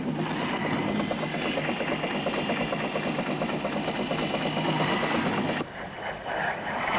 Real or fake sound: real